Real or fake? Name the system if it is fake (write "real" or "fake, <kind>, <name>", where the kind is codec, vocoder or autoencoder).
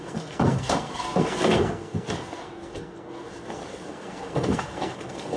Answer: fake, codec, SNAC